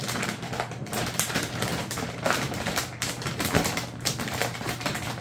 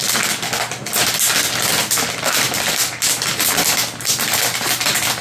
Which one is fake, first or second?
first